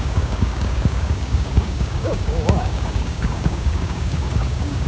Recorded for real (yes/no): no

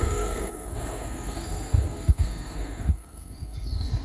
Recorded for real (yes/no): no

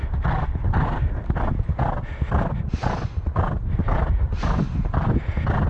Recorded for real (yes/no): yes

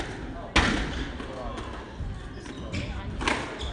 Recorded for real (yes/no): yes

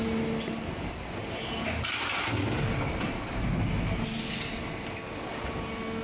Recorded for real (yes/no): yes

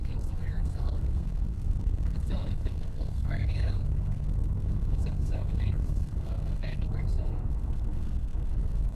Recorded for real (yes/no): no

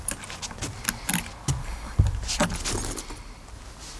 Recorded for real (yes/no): yes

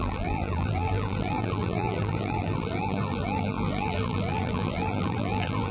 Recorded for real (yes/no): no